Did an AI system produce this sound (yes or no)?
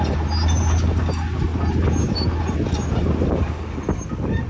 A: no